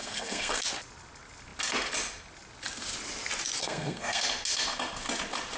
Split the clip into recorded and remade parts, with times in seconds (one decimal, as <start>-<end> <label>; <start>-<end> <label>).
0.0-0.6 remade; 0.6-3.6 recorded; 3.6-4.2 remade; 4.2-5.6 recorded